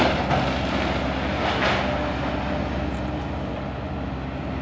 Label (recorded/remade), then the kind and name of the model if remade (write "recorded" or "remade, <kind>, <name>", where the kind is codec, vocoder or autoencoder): recorded